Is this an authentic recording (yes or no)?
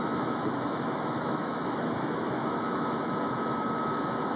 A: no